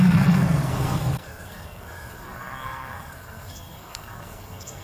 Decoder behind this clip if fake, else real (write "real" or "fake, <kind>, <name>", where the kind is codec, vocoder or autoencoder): fake, codec, SNAC